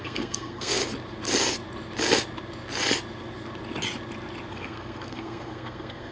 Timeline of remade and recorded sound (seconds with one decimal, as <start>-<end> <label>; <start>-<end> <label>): 0.0-0.8 remade; 0.8-4.5 recorded; 4.5-6.1 remade